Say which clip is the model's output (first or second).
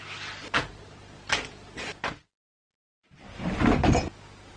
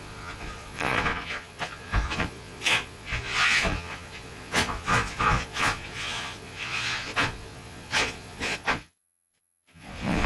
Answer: second